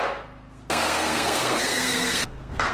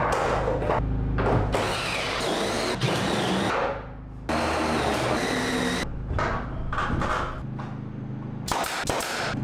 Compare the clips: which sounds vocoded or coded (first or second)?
first